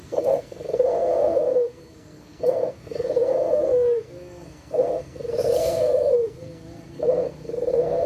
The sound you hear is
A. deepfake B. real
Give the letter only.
A